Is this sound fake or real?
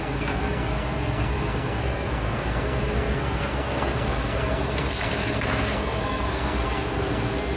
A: fake